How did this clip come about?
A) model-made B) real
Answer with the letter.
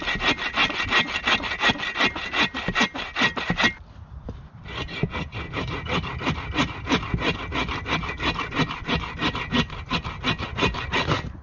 B